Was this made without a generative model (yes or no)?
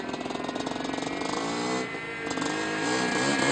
yes